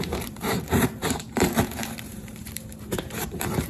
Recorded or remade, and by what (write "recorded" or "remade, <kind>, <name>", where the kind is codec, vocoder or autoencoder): remade, vocoder, BigVGAN v2